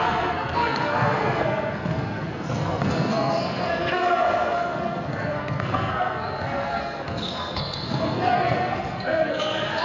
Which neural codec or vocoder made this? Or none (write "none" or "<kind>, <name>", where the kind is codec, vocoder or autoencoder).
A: codec, SNAC